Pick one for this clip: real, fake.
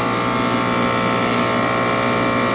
real